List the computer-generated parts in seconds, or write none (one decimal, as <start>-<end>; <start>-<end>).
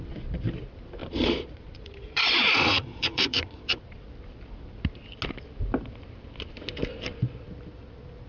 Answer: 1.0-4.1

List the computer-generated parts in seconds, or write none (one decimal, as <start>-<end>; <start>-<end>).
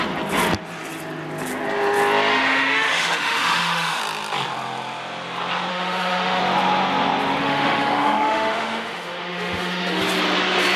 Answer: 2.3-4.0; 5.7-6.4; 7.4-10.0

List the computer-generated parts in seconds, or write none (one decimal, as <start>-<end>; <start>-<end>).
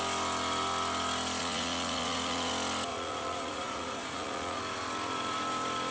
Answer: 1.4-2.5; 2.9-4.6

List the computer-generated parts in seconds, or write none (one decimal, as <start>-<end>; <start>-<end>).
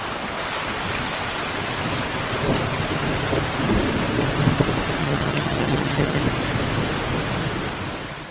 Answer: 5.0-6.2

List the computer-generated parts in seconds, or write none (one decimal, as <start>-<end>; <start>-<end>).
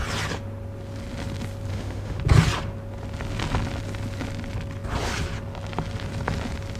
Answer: 1.7-2.2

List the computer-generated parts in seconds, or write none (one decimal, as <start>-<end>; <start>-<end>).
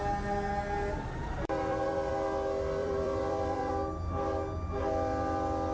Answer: 1.2-2.1; 2.8-3.7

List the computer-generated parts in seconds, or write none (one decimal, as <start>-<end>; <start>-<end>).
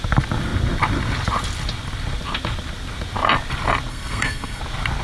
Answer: 3.9-4.6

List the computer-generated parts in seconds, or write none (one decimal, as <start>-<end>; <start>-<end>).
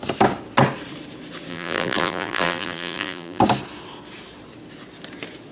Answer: 1.5-3.4